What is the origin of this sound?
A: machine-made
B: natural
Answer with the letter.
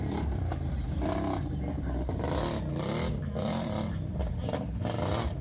B